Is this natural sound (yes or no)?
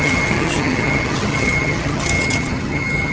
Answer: no